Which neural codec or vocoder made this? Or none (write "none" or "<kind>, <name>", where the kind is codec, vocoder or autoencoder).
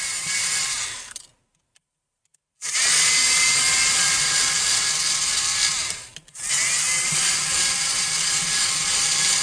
none